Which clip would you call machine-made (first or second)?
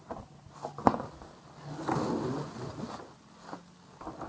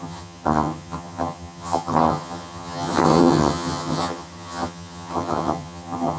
second